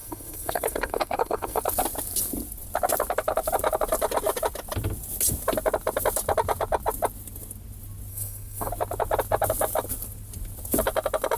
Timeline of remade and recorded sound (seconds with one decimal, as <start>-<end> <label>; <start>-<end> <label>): 0.0-1.6 remade; 1.6-8.1 recorded; 8.1-8.7 remade; 8.7-11.4 recorded